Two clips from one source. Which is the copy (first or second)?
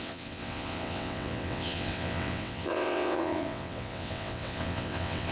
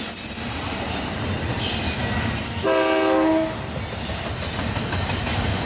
first